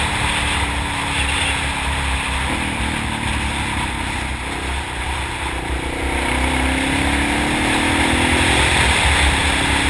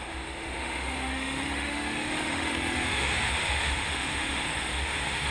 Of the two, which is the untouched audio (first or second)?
first